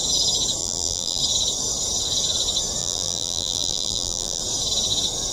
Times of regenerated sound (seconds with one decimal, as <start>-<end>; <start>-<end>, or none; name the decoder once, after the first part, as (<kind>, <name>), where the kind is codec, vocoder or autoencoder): 0.6-1.2 (vocoder, BigVGAN v2); 2.8-4.4